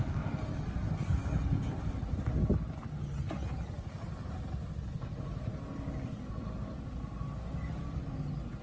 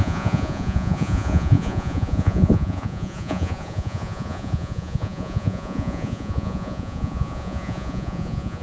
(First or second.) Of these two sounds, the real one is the first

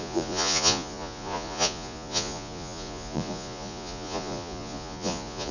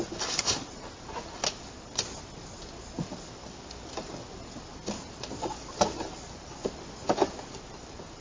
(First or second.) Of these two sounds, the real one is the second